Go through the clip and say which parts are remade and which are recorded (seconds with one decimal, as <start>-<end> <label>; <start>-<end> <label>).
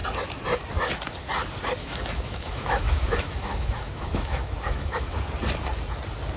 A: 0.0-1.8 recorded; 1.8-5.2 remade; 5.2-6.4 recorded